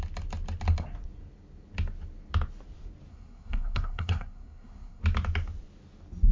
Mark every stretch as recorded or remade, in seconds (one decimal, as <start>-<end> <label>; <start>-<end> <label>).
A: 0.0-3.1 recorded; 3.1-5.0 remade; 5.0-6.3 recorded